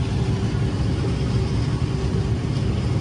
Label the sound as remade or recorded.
recorded